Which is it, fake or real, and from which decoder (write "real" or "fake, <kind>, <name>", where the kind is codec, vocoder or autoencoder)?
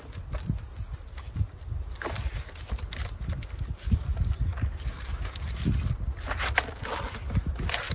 real